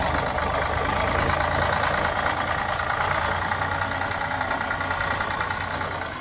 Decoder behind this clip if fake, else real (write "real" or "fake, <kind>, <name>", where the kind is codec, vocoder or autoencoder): real